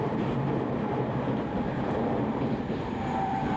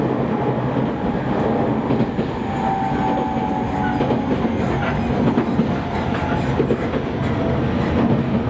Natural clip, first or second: second